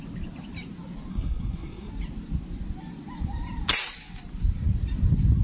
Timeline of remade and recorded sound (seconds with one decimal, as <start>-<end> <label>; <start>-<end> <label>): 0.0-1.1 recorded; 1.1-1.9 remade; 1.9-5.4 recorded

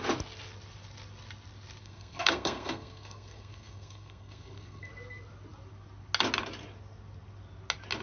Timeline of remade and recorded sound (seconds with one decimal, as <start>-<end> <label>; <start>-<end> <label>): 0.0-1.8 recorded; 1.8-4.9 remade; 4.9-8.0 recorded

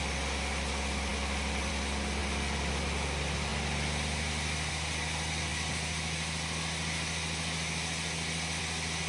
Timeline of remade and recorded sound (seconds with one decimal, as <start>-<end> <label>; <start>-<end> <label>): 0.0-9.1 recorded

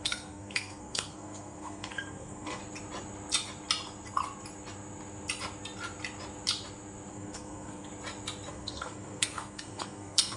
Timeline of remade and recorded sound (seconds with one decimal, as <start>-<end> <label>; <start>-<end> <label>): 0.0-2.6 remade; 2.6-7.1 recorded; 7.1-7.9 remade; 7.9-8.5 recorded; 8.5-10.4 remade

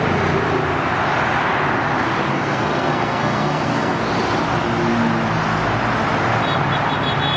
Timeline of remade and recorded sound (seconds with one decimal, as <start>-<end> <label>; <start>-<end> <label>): 0.0-2.3 recorded; 2.3-4.0 remade; 4.0-7.4 recorded

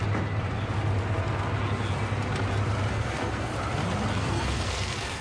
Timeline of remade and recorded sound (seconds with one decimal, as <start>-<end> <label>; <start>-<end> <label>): 0.0-2.9 recorded; 2.9-3.5 remade; 3.5-4.2 recorded; 4.2-5.2 remade

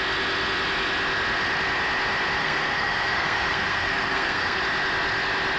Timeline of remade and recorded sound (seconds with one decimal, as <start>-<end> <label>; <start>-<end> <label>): 0.0-2.4 recorded; 2.4-4.6 remade; 4.6-5.6 recorded

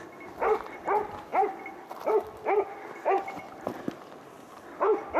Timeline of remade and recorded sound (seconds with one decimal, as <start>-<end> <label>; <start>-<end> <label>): 0.0-5.2 recorded